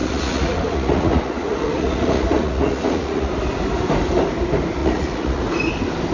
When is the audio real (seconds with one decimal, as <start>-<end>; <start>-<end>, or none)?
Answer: 3.3-4.8; 5.4-6.1